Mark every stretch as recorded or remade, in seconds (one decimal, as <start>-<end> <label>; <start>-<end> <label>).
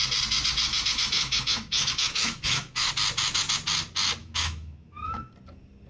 0.0-0.7 recorded; 0.7-2.9 remade; 2.9-4.2 recorded; 4.2-5.3 remade; 5.3-5.9 recorded